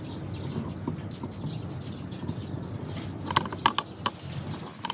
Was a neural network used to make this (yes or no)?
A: no